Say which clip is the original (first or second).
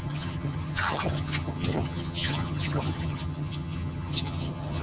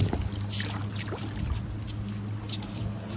second